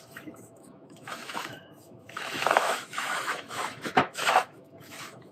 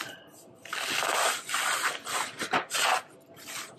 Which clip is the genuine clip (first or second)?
second